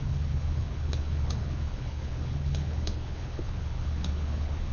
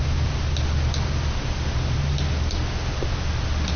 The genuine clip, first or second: second